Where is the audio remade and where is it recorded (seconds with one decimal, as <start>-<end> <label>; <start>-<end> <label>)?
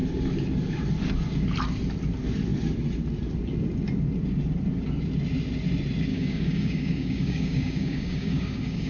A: 0.0-6.1 recorded; 6.1-8.9 remade